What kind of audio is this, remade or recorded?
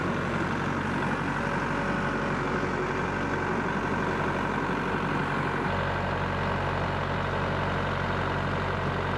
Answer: recorded